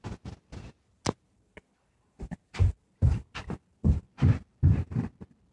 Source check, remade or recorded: recorded